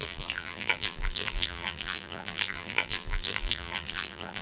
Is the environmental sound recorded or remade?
remade